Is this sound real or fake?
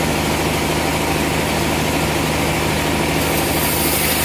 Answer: real